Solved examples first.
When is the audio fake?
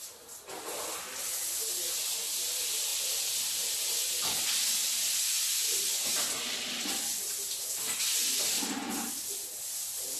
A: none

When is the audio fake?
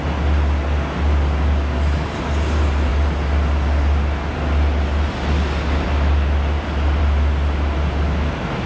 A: none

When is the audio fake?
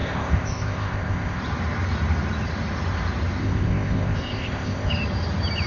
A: 0.0-1.4; 3.4-4.9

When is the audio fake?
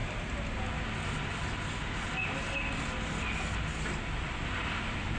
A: none